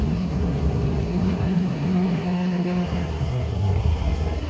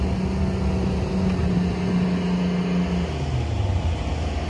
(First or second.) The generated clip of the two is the first